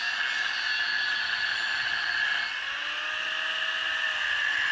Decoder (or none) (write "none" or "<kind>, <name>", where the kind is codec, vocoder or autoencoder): none